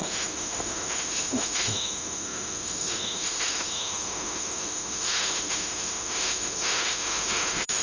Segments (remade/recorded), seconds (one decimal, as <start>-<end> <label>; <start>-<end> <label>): 0.0-7.8 remade